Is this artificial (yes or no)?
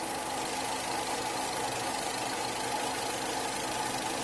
no